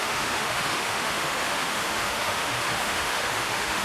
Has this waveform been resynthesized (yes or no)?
yes